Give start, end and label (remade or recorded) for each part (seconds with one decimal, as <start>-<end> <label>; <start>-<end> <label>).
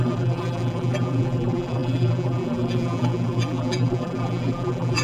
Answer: 0.0-5.0 remade